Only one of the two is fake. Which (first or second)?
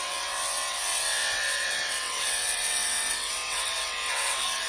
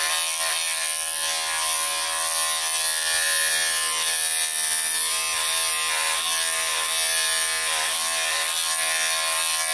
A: first